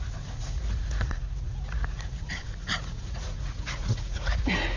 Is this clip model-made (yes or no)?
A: yes